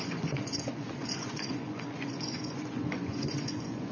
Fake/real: fake